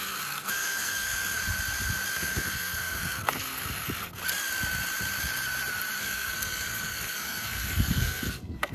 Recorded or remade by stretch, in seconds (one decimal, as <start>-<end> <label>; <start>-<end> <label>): 0.0-1.4 remade; 1.4-2.1 recorded; 2.1-4.2 remade; 4.2-6.0 recorded; 6.0-8.7 remade